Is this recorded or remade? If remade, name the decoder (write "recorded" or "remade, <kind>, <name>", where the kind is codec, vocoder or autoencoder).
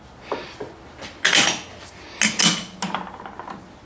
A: recorded